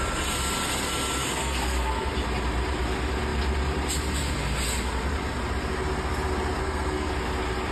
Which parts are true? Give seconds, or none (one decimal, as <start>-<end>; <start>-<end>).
0.0-1.4; 2.1-6.6; 7.1-7.7